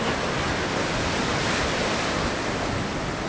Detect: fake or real real